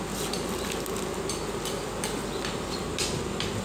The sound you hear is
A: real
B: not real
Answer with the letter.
A